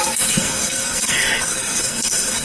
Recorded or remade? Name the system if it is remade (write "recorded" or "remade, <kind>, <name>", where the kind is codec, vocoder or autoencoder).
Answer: remade, codec, SNAC